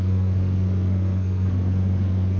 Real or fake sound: fake